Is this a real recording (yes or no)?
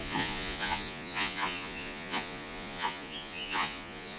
no